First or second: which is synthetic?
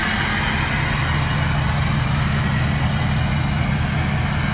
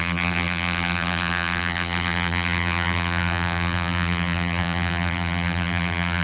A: second